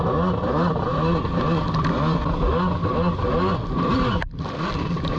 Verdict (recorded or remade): recorded